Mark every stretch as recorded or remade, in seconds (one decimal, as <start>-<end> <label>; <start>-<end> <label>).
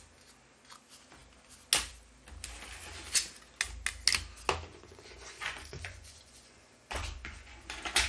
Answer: 0.0-4.7 recorded; 4.7-8.1 remade